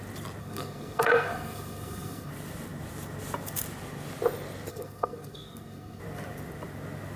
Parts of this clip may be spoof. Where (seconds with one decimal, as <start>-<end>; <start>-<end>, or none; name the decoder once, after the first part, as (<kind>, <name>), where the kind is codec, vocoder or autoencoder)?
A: 0.4-2.3 (codec, SNAC); 4.7-6.0